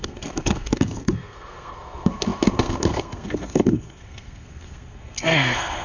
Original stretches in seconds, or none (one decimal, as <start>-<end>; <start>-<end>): none